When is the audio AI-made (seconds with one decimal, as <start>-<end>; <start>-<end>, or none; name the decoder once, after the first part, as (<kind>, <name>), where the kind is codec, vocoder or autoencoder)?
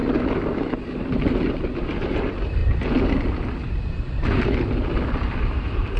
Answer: 1.5-2.6 (vocoder, BigVGAN v2); 5.4-6.0